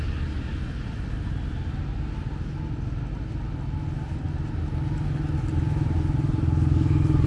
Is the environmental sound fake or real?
real